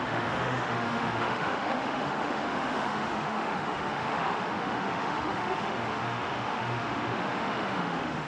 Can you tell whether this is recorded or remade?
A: remade